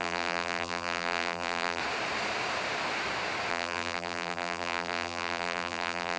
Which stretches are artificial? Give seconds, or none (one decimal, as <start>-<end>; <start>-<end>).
0.0-1.8; 3.5-6.2